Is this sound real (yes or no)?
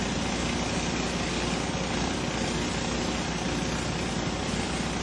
yes